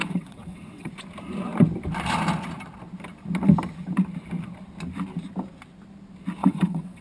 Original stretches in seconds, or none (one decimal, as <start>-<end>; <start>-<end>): 0.9-6.4